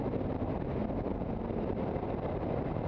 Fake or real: fake